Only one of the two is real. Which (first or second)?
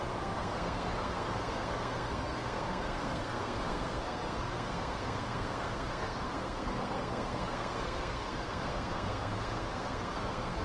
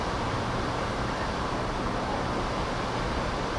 second